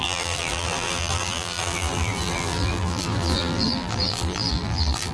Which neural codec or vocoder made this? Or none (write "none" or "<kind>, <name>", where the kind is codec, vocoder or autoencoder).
vocoder, BigVGAN v2